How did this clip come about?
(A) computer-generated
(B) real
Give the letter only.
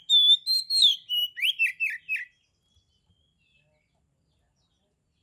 B